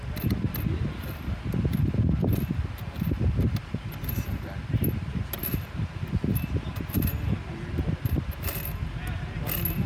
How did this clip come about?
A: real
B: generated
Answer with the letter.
A